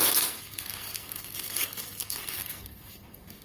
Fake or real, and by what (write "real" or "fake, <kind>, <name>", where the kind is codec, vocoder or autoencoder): fake, codec, SNAC